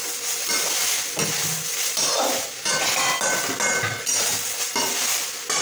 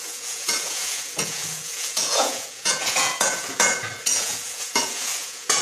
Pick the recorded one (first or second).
first